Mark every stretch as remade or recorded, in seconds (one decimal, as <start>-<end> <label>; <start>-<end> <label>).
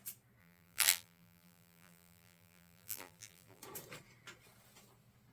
0.0-0.4 recorded; 0.4-3.6 remade; 3.6-5.3 recorded